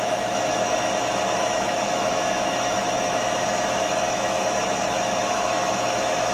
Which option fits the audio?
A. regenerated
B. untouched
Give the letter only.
A